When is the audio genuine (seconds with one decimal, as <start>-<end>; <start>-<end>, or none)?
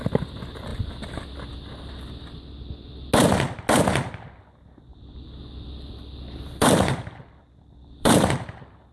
0.0-4.9; 8.3-8.9